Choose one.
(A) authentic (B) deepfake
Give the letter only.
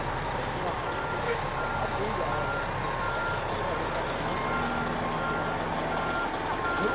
A